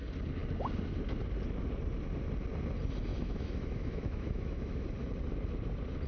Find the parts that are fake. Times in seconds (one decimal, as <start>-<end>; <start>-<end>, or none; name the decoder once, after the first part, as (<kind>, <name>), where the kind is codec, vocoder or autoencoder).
3.1-4.8 (autoencoder, DAC-VAE)